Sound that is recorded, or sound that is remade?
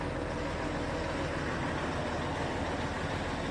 recorded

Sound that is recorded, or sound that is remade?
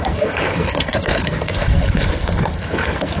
remade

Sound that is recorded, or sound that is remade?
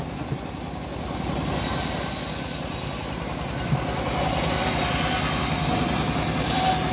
recorded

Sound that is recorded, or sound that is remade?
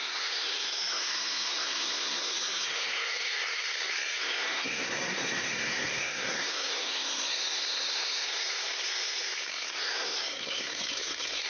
remade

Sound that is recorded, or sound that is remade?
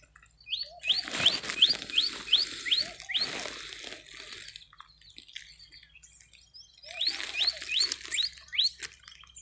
recorded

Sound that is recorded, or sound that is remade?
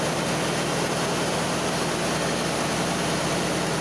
recorded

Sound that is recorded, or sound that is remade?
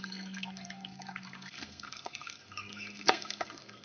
remade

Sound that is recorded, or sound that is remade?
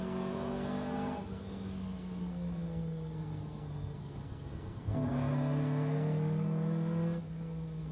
remade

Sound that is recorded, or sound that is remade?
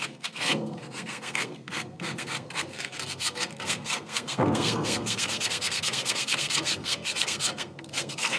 remade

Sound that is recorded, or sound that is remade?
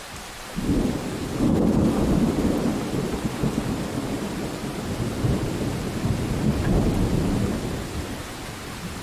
recorded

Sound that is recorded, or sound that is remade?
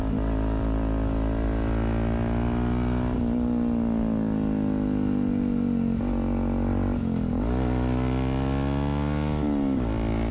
recorded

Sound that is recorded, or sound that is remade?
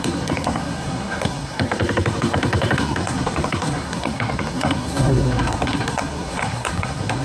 remade